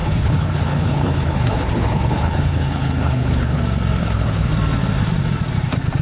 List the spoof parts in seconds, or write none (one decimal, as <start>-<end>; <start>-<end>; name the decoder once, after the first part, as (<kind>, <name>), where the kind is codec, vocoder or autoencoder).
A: 0.0-3.6 (codec, HILCodec); 4.0-4.5